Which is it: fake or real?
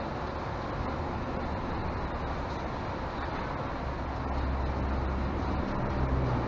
real